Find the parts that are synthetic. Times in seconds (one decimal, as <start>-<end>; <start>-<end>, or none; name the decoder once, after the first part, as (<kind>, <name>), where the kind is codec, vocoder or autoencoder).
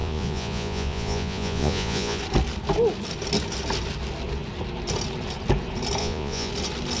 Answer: 0.0-2.2 (vocoder, Vocos); 6.0-6.5